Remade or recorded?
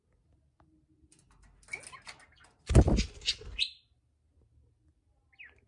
recorded